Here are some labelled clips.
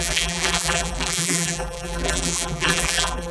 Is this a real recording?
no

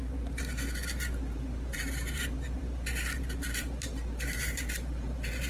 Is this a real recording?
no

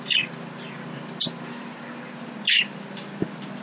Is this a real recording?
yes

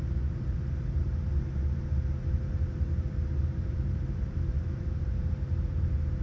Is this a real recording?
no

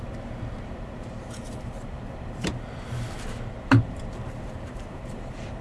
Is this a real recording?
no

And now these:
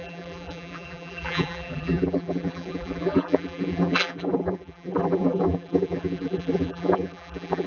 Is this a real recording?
no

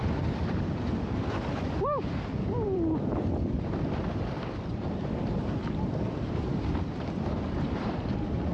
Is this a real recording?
no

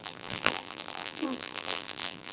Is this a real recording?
no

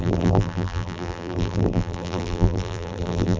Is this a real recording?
no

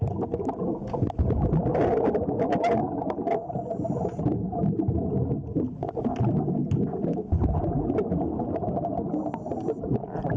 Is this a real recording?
yes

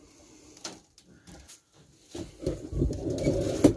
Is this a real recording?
yes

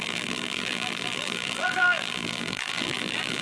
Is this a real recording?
no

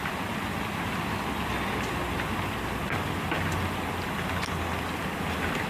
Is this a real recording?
yes